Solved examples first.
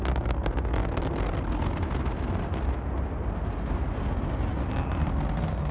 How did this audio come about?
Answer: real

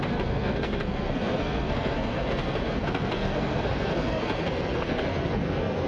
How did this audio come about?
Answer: fake